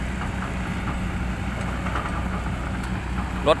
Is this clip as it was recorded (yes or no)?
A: yes